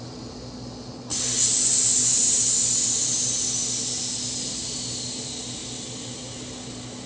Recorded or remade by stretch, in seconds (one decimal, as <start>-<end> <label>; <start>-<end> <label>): 0.0-7.1 recorded